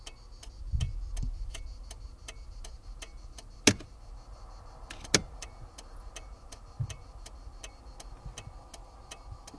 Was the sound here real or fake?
real